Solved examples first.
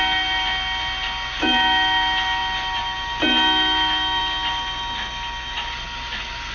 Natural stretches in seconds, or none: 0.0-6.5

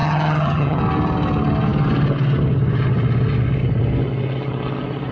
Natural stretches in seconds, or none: 0.8-5.1